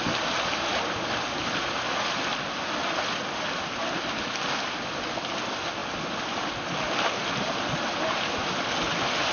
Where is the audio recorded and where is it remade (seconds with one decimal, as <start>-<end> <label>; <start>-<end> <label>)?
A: 0.0-9.3 recorded